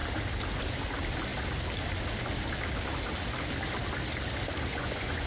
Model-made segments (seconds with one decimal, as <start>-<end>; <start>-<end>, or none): 4.7-5.3